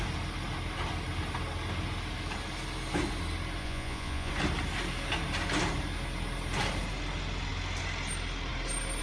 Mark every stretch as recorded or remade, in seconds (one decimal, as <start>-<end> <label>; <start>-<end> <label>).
0.0-3.6 recorded; 3.6-4.3 remade; 4.3-9.0 recorded

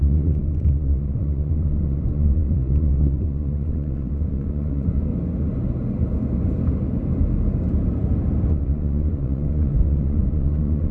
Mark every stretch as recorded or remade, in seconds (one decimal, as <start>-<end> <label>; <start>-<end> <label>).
0.0-5.1 remade; 5.1-8.5 recorded; 8.5-10.9 remade

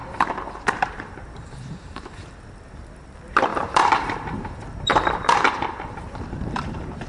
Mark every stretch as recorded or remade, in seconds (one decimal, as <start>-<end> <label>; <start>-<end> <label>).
0.0-2.3 remade; 2.3-3.5 recorded; 3.5-7.1 remade

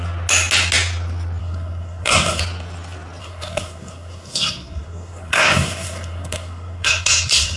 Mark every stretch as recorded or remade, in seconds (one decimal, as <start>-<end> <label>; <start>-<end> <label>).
0.0-1.4 recorded; 1.4-2.4 remade; 2.4-3.2 recorded; 3.2-7.6 remade

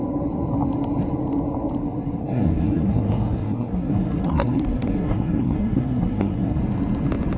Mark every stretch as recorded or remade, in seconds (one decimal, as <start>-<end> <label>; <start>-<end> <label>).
0.0-2.2 recorded; 2.2-6.6 remade; 6.6-7.4 recorded